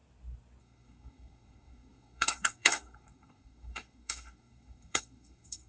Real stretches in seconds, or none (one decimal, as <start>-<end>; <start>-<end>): 0.0-0.6